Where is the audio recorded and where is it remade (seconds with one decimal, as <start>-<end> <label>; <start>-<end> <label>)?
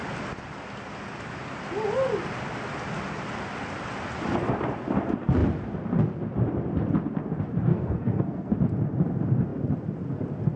0.0-7.7 recorded; 7.7-8.5 remade; 8.5-10.6 recorded